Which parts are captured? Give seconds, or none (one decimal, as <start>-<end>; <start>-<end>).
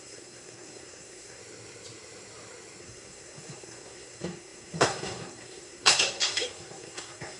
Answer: 1.4-2.8